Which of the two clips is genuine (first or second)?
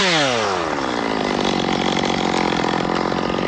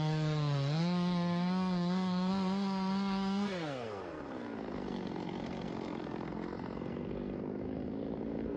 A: first